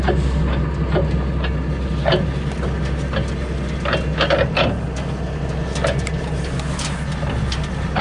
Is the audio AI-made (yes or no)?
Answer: no